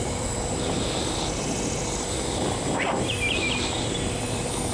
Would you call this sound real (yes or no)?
yes